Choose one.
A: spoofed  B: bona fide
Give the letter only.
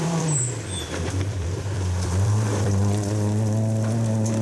A